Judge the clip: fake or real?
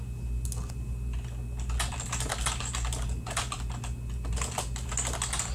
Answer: real